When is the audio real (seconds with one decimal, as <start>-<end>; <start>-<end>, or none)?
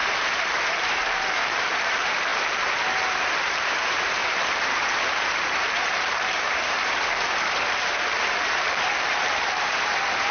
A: none